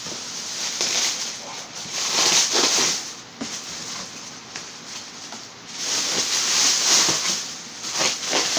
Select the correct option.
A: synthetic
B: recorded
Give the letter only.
B